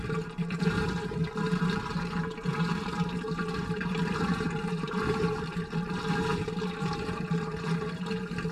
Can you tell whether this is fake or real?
fake